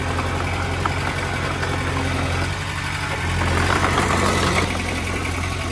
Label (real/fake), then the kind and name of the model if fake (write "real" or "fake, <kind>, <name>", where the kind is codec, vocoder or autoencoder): real